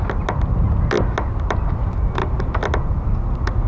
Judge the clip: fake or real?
real